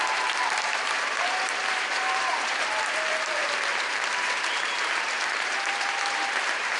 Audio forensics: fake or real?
fake